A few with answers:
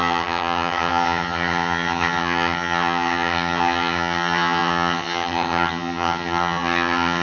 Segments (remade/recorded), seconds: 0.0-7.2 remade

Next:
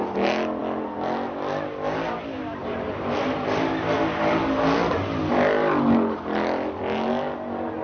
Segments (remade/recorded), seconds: 0.0-7.8 recorded

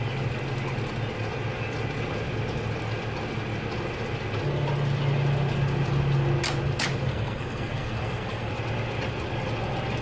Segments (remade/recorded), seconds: 0.0-7.1 recorded; 7.1-8.5 remade; 8.5-10.0 recorded

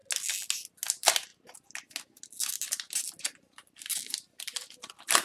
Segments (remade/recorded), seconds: 0.0-5.2 recorded

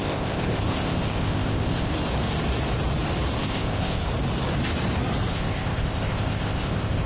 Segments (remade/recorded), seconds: 0.0-1.9 remade; 1.9-3.4 recorded; 3.4-4.0 remade; 4.0-5.3 recorded; 5.3-7.1 remade

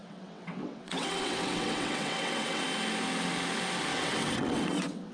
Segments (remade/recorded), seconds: 0.0-2.6 remade; 2.6-3.9 recorded; 3.9-5.1 remade

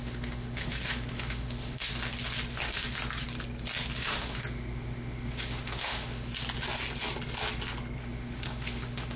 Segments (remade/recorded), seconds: 0.0-1.9 remade; 1.9-2.5 recorded; 2.5-3.0 remade; 3.0-4.0 recorded; 4.0-6.3 remade; 6.3-8.0 recorded; 8.0-9.2 remade